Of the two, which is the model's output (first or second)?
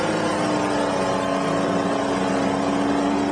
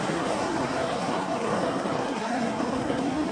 second